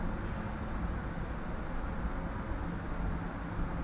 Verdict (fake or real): real